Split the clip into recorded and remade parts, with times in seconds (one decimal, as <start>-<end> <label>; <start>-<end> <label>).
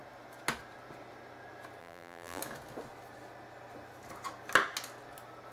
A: 0.0-1.8 recorded; 1.8-2.4 remade; 2.4-5.5 recorded